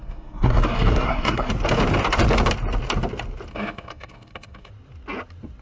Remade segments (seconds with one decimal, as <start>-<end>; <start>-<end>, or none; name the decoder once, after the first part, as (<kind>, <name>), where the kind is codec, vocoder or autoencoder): 0.0-1.5 (codec, SNAC); 3.5-4.7